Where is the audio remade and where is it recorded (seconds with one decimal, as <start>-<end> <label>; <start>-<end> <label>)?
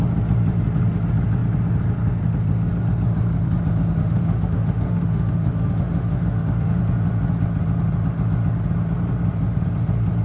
0.0-4.0 recorded; 4.0-6.8 remade; 6.8-10.2 recorded